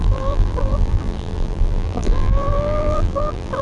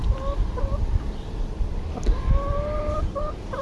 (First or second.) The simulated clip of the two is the first